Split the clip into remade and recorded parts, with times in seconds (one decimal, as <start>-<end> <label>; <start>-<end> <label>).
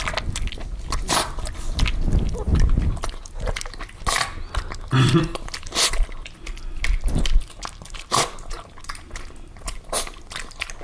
0.0-10.8 recorded